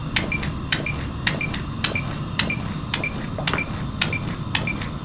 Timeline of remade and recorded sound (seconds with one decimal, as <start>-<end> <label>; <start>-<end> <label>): 0.0-3.0 remade; 3.0-5.0 recorded